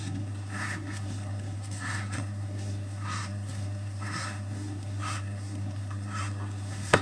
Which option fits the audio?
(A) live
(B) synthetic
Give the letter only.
B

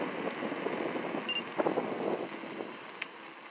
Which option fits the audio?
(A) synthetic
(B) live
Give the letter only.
B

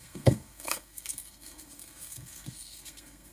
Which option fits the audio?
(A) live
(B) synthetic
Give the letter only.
B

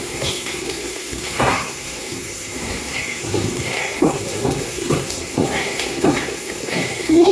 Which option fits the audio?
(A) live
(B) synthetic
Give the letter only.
B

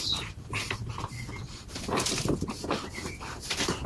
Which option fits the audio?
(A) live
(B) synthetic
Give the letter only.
A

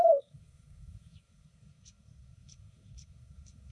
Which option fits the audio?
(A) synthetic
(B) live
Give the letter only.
A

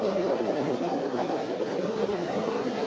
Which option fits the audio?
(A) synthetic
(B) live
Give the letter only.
A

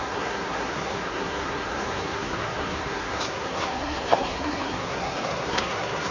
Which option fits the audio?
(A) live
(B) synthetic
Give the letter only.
B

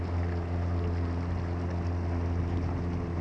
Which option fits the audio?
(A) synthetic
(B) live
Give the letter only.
B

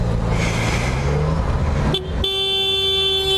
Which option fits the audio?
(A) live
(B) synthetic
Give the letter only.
A